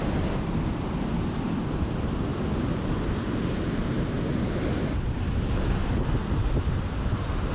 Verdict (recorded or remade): recorded